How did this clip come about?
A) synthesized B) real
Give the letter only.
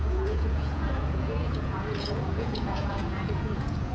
A